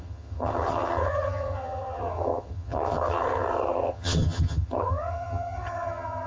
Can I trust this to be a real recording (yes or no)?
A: no